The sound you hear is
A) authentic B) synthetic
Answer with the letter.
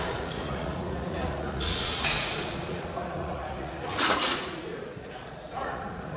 B